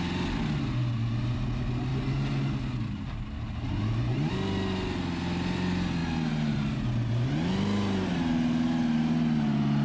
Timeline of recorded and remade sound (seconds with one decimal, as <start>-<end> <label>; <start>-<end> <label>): 0.0-9.8 recorded